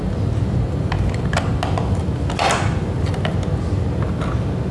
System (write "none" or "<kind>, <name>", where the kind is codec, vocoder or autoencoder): none